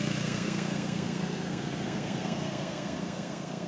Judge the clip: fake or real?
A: fake